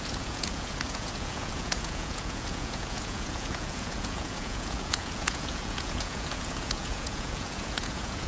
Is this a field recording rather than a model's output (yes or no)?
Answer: no